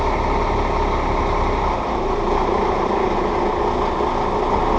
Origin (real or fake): real